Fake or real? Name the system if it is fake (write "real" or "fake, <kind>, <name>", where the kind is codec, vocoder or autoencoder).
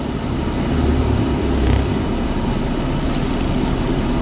real